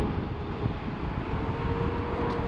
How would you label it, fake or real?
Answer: real